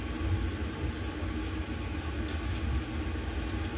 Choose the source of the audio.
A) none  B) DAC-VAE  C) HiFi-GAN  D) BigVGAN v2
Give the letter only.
A